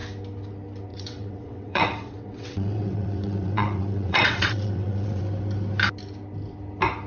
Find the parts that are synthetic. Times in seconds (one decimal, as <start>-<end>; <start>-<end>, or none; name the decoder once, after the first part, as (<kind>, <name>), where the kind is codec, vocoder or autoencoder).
0.9-5.2 (vocoder, WaveNeXt)